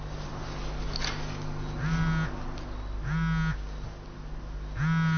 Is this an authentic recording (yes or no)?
yes